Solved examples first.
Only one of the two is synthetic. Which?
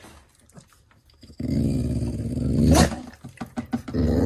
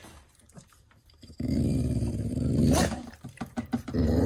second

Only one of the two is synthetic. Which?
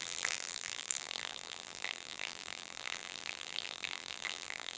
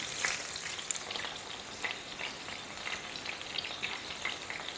first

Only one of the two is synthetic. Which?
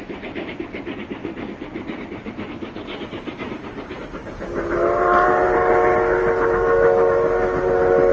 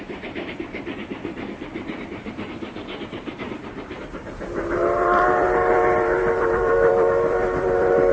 second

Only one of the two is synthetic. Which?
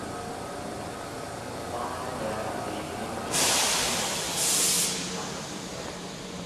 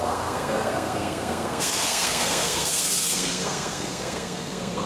second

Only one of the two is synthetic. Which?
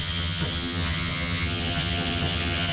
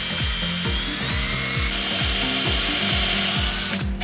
first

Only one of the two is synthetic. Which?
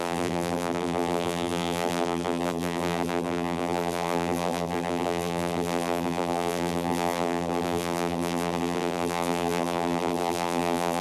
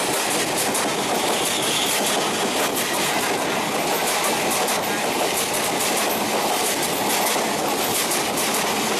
first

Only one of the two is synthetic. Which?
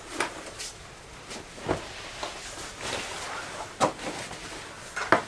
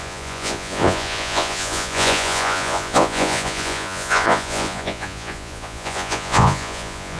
second